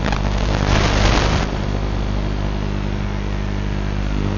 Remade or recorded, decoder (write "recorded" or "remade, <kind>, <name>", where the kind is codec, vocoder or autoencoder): recorded